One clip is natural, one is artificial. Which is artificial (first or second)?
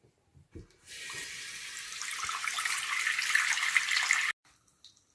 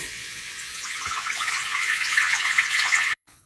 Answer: second